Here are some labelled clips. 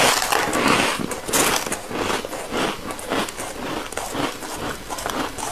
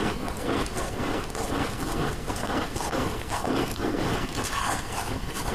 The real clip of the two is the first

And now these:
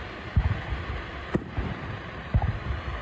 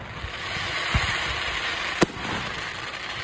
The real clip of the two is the second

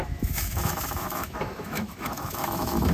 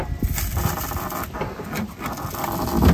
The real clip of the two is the second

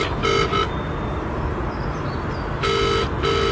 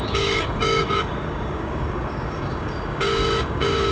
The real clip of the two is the first